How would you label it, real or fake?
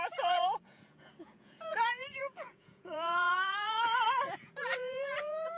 fake